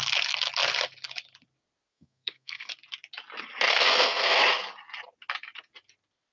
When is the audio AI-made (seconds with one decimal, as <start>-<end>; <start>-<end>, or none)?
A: 1.9-2.7; 3.7-4.4